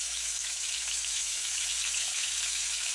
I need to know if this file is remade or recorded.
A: remade